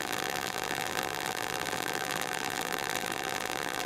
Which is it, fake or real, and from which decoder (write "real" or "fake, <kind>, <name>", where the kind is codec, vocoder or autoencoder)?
fake, vocoder, BigVGAN v2